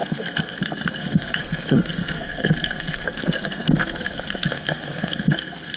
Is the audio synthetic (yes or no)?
yes